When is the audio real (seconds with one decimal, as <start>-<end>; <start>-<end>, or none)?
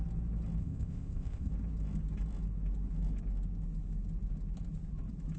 0.0-0.6; 1.5-5.4